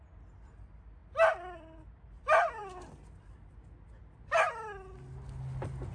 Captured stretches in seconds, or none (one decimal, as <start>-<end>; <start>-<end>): 0.0-5.9